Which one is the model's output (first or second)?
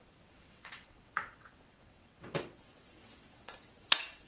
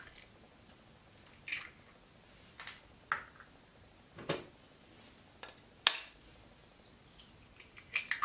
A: first